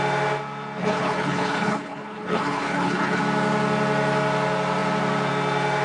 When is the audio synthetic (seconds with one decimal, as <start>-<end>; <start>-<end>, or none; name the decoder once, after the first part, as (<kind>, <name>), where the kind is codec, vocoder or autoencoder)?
0.8-3.2 (codec, HILCodec)